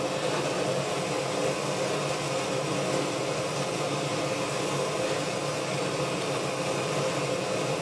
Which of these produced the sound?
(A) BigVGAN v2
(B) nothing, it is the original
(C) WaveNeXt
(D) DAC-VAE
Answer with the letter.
B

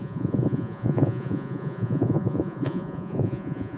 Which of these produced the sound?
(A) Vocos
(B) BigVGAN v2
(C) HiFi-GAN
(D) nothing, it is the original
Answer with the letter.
A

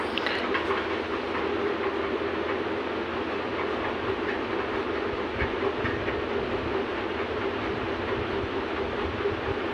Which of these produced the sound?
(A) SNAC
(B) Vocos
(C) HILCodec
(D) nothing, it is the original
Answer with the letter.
D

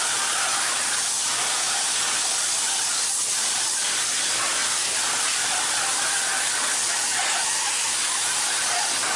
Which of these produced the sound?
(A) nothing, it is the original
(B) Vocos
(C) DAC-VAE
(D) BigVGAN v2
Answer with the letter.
A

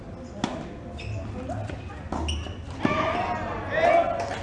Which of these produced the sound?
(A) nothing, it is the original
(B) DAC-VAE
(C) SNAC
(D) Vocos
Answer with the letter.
A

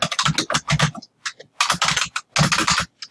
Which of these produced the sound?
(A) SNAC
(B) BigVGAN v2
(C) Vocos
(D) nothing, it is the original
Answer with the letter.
D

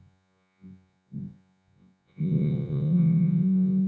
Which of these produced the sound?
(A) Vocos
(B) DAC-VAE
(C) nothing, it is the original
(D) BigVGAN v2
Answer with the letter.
A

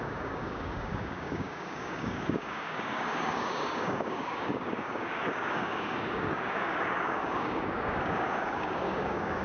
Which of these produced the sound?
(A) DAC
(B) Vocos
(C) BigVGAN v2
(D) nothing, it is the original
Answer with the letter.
A